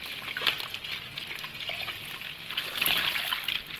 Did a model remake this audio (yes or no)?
no